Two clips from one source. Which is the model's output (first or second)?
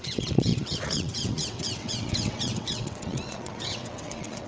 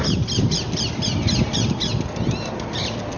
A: first